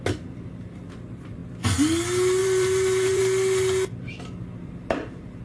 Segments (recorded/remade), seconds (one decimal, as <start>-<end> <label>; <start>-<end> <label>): 0.0-2.4 recorded; 2.4-3.2 remade; 3.2-5.4 recorded